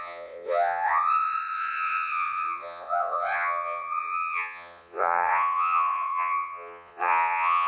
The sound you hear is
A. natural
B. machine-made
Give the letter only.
B